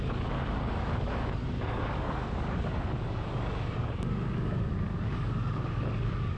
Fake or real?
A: fake